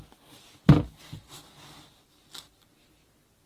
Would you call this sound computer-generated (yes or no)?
no